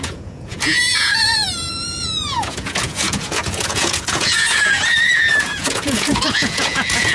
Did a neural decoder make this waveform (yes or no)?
yes